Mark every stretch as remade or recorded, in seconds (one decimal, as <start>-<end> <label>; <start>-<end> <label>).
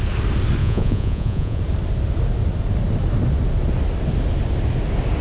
0.0-0.6 recorded; 0.6-1.6 remade; 1.6-5.2 recorded